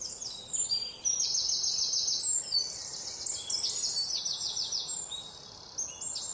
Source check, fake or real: real